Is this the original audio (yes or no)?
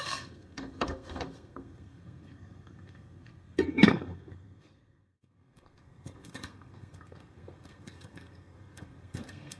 no